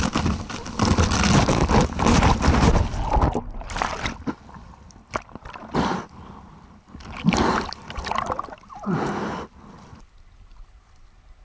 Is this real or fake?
real